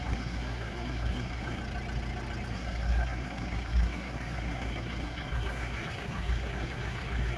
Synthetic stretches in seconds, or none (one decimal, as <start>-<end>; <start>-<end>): 0.0-1.6; 2.5-7.4